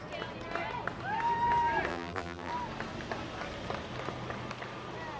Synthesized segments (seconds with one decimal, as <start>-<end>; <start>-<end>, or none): 1.9-2.5